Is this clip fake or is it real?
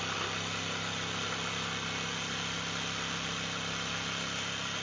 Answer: real